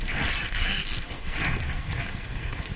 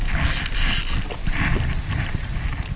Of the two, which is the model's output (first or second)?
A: first